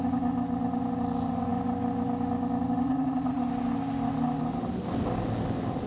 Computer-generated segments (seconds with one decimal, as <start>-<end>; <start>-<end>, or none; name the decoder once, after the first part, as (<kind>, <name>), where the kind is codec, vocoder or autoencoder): none